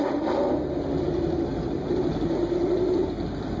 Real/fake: fake